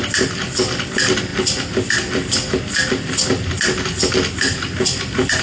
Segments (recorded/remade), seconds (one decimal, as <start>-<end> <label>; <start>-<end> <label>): 0.0-5.4 recorded